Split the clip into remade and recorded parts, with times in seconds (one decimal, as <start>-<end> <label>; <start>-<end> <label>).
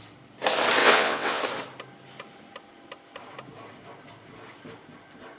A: 0.0-0.8 recorded; 0.8-1.4 remade; 1.4-5.4 recorded